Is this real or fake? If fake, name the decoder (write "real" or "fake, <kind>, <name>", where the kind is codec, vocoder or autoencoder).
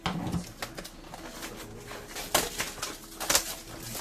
real